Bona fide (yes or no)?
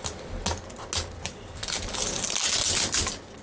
yes